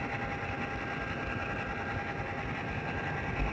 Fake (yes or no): no